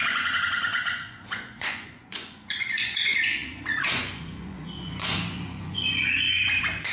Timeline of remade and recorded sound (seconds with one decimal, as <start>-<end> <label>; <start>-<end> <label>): 0.0-6.9 remade